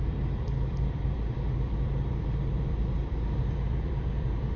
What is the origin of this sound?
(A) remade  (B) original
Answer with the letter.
A